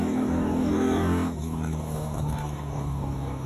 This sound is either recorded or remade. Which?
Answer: remade